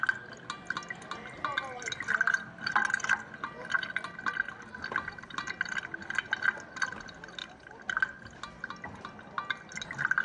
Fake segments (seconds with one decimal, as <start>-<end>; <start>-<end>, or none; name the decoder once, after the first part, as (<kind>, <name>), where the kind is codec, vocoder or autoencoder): none